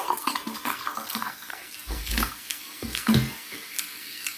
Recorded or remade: remade